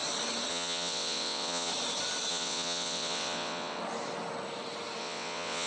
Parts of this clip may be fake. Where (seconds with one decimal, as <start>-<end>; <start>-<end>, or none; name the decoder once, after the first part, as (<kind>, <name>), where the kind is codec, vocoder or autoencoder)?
0.5-1.7 (vocoder, WaveNeXt); 2.3-3.8; 5.0-5.7